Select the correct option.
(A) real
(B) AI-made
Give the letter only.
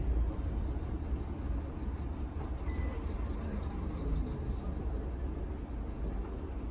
A